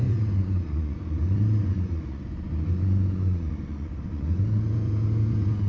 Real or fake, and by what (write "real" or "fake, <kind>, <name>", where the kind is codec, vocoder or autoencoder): fake, vocoder, Vocos